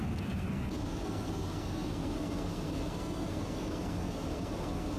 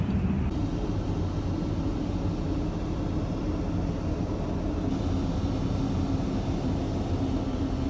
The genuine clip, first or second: second